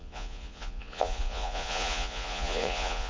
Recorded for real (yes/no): no